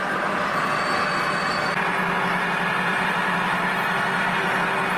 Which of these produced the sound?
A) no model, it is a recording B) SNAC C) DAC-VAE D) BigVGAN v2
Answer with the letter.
A